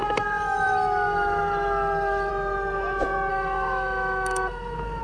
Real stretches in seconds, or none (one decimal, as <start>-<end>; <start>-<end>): 2.3-3.3